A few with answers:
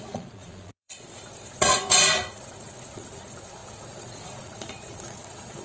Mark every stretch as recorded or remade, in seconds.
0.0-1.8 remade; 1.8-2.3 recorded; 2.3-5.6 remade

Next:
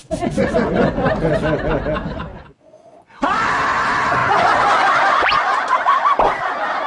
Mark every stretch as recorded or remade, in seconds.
0.0-1.3 remade; 1.3-2.3 recorded; 2.3-3.5 remade; 3.5-4.2 recorded; 4.2-5.7 remade; 5.7-6.9 recorded

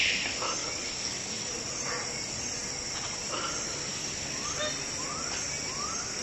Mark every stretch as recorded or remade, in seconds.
0.0-0.6 recorded; 0.6-1.3 remade; 1.3-6.2 recorded

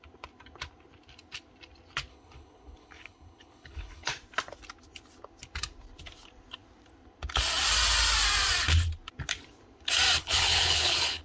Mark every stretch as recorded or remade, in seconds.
0.0-2.1 recorded; 2.1-4.1 remade; 4.1-10.2 recorded; 10.2-11.2 remade

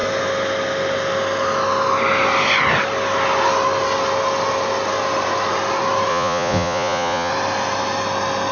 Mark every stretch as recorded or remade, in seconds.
0.0-6.1 recorded; 6.1-7.3 remade; 7.3-8.5 recorded

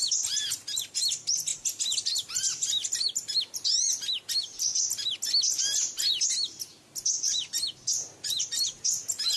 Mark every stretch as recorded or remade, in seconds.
0.0-9.4 recorded

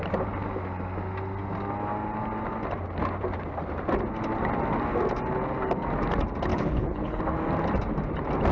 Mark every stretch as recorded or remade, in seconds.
0.0-6.5 recorded; 6.5-7.2 remade; 7.2-8.5 recorded

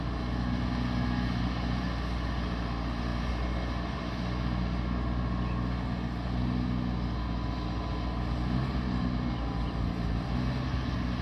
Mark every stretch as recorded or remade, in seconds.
0.0-11.2 recorded